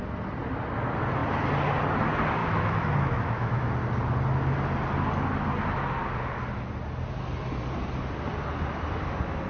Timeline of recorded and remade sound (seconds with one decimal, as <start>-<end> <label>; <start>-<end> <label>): 0.0-2.4 recorded; 2.4-3.7 remade; 3.7-9.5 recorded